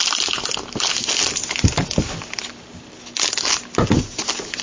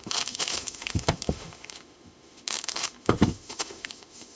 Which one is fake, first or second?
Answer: second